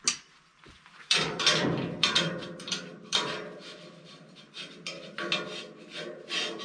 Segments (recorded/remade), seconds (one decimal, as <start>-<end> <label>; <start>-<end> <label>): 0.0-0.5 recorded; 0.5-4.5 remade; 4.5-6.6 recorded